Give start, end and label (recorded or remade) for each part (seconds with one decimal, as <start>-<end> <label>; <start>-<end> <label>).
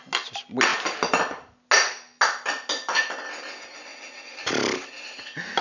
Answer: 0.0-5.6 recorded